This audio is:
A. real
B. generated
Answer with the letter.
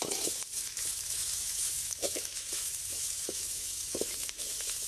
B